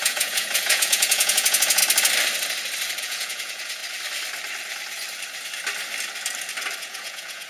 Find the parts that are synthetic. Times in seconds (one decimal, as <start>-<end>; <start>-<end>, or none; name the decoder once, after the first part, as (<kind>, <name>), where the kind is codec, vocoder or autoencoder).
0.0-1.8 (vocoder, Vocos); 3.0-3.8; 6.8-7.5